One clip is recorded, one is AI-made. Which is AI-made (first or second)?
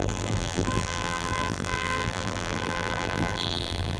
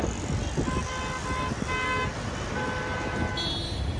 first